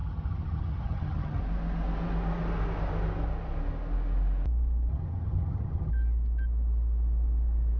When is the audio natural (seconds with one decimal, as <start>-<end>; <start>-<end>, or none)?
1.4-4.9; 5.9-7.8